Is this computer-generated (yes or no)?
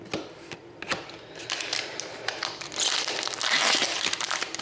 yes